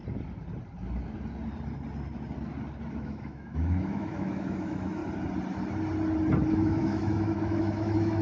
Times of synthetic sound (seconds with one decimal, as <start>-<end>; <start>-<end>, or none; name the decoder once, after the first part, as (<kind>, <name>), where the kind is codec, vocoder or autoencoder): 2.9-5.0 (autoencoder, DAC-VAE); 6.5-8.2